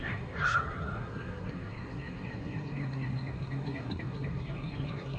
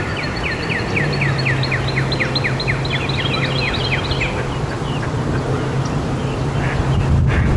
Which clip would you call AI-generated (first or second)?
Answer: first